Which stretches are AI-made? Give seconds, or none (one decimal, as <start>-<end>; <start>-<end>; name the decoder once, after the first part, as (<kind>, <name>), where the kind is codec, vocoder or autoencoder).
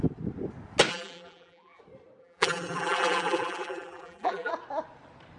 0.9-1.8 (vocoder, BigVGAN v2); 2.2-4.5